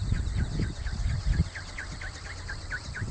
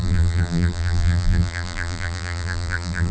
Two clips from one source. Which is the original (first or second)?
first